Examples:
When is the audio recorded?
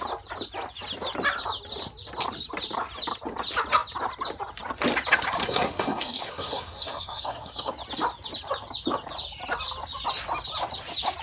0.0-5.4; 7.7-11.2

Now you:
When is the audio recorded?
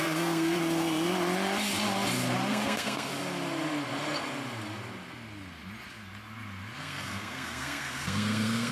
0.6-2.5; 3.1-6.8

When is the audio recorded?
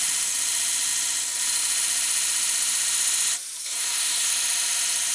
0.0-3.6; 4.3-5.1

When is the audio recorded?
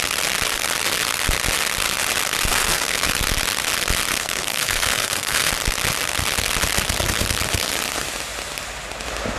0.0-2.5; 3.1-4.1; 5.5-9.4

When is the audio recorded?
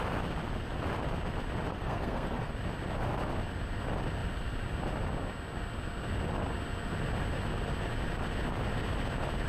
0.0-1.7; 2.5-9.5